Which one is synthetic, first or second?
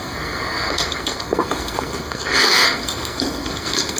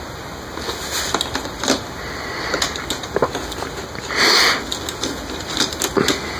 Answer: first